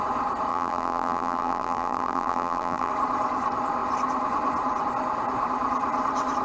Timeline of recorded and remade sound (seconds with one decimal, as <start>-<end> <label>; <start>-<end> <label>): 0.0-0.5 recorded; 0.5-2.9 remade; 2.9-6.4 recorded